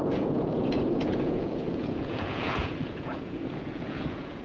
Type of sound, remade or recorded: remade